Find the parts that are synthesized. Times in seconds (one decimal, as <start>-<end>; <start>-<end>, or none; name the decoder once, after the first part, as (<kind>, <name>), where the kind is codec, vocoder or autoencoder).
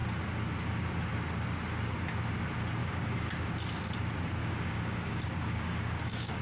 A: 2.8-3.3 (codec, DAC); 4.4-6.4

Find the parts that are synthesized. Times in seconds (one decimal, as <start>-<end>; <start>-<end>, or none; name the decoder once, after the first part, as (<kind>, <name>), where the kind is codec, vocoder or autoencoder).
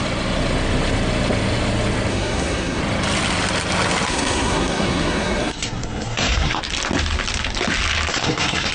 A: 2.1-2.8 (codec, SNAC); 4.1-6.6; 8.1-8.7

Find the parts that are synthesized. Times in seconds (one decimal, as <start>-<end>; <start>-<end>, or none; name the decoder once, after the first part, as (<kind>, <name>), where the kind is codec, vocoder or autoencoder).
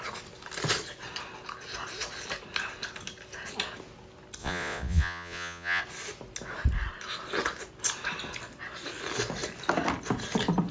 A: 4.4-5.8 (vocoder, Vocos)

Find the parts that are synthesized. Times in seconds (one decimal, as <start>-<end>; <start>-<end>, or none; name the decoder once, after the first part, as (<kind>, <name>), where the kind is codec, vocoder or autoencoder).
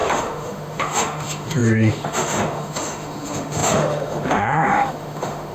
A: 0.0-5.5 (autoencoder, DAC-VAE)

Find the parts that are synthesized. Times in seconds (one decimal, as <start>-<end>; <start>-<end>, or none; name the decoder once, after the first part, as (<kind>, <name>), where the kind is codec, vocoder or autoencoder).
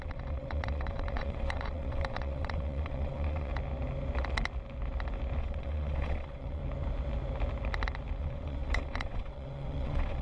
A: 0.0-3.5 (vocoder, WaveNeXt); 5.4-6.6; 8.2-10.2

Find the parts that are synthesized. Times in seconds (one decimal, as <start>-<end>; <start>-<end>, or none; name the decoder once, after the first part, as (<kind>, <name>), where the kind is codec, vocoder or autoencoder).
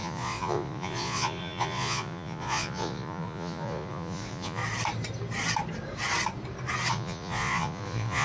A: 0.0-4.6 (vocoder, Vocos); 6.9-8.2